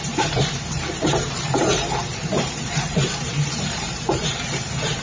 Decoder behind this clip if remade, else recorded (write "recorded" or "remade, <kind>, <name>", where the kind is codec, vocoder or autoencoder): remade, vocoder, BigVGAN v2